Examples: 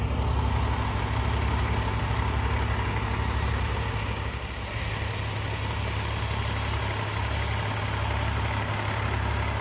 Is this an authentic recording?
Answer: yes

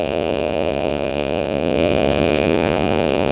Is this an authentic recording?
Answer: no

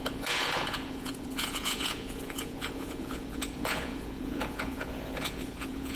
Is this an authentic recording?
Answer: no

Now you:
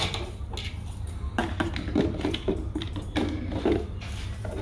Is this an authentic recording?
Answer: yes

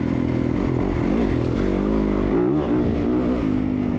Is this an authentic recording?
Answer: yes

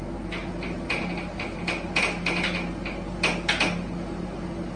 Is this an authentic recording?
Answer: yes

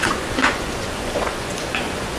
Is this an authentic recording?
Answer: no